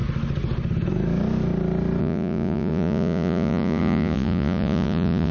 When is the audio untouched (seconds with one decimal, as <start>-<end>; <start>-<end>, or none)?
0.0-2.0